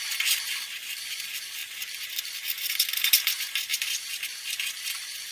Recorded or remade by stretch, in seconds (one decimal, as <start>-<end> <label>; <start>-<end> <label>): 0.0-1.6 remade; 1.6-2.7 recorded; 2.7-5.3 remade